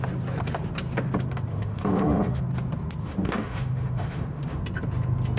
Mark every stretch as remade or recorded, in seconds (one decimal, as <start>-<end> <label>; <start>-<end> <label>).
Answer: 0.0-1.5 recorded; 1.5-2.4 remade; 2.4-3.0 recorded; 3.0-4.6 remade; 4.6-5.4 recorded